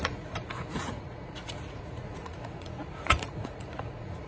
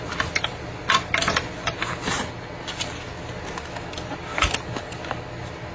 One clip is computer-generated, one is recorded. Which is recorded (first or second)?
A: second